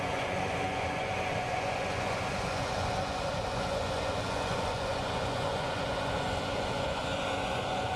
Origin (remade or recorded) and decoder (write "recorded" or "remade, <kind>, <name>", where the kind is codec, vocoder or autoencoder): remade, vocoder, Vocos